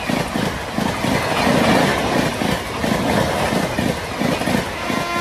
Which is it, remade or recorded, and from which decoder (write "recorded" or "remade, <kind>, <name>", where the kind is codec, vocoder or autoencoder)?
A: recorded